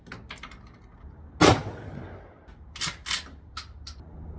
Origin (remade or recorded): recorded